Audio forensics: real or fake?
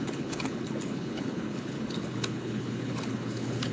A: fake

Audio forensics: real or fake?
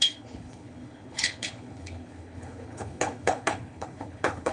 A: fake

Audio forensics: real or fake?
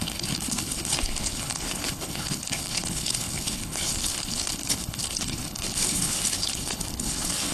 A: fake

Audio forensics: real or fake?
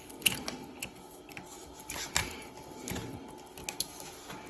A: real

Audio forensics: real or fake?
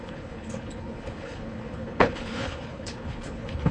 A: fake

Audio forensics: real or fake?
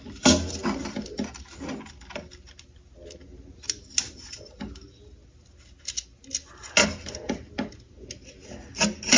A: real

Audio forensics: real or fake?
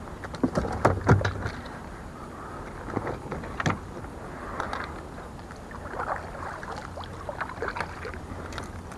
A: real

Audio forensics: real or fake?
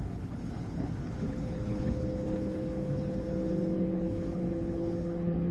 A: fake